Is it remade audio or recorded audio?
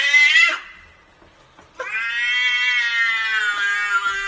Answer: recorded